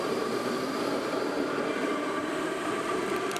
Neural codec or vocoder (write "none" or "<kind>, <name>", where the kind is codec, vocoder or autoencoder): vocoder, BigVGAN v2